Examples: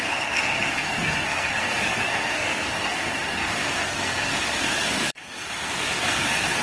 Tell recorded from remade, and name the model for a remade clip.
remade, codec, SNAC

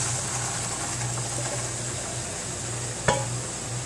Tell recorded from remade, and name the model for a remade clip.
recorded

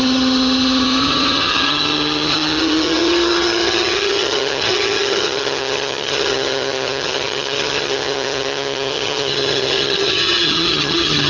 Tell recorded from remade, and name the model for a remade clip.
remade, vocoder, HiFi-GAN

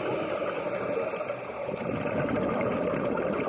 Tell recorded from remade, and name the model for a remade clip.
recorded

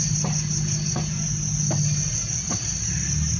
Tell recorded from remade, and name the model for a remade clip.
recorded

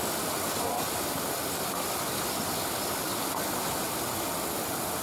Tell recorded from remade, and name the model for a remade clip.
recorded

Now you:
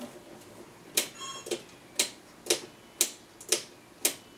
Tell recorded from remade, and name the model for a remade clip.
recorded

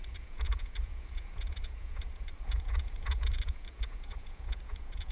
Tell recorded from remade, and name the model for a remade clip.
remade, vocoder, Vocos